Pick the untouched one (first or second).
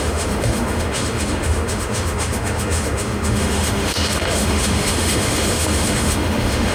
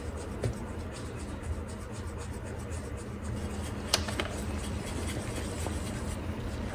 second